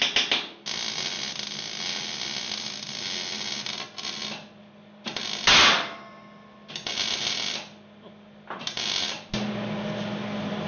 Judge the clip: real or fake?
real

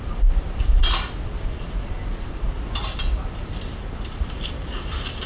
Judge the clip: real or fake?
real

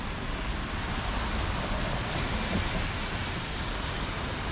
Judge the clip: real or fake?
real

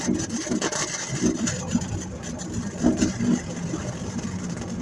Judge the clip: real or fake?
real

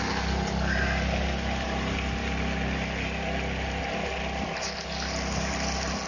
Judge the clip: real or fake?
real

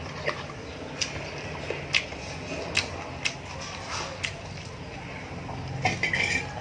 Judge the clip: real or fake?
real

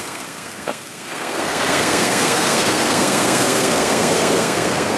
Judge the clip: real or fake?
fake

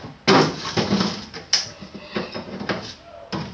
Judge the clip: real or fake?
real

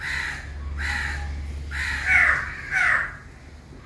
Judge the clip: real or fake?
real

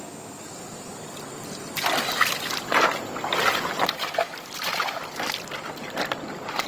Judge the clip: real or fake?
real